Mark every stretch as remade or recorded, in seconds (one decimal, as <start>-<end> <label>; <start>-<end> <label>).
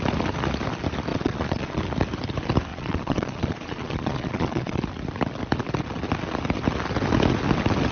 0.0-1.1 recorded; 1.1-1.8 remade; 1.8-2.7 recorded; 2.7-4.8 remade; 4.8-7.9 recorded